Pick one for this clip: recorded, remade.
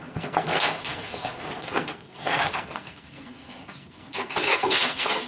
remade